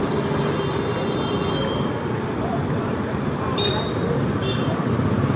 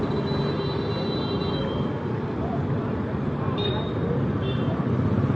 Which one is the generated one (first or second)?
first